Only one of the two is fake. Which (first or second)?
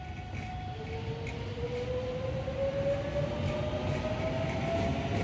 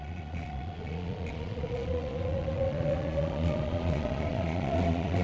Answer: second